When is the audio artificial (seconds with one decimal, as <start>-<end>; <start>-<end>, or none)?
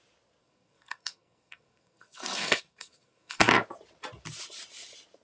0.4-3.5